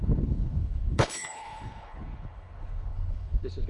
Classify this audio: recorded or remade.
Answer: remade